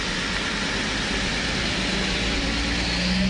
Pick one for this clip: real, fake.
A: real